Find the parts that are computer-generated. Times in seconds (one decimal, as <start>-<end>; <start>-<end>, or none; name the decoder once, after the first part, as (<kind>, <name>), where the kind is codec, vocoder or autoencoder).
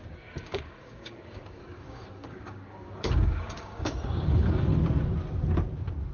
0.0-4.7 (codec, DAC)